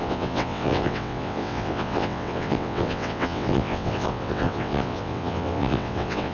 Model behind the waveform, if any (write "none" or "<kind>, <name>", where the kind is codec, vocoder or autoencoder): vocoder, WaveNeXt